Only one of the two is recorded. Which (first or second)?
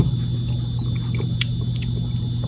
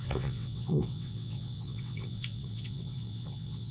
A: first